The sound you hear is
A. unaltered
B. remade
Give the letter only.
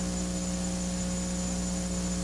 A